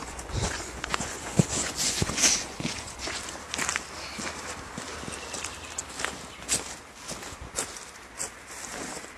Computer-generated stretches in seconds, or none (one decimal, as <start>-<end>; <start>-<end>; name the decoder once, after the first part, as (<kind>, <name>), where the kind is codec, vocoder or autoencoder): 0.0-3.2 (vocoder, Vocos)